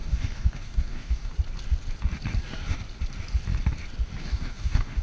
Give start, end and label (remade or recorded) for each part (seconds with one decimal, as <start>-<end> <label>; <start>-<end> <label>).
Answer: 0.0-1.3 remade; 1.3-4.2 recorded; 4.2-5.0 remade